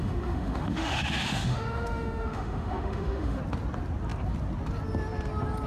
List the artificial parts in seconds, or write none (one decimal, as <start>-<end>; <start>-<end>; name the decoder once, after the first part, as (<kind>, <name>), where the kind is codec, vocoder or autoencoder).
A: 0.0-3.4 (autoencoder, DAC-VAE)